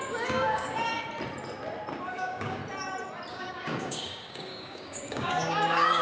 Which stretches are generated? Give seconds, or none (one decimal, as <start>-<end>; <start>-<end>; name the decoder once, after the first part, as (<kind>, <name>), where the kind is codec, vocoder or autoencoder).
0.0-0.9 (codec, DAC); 2.1-2.6; 3.3-6.0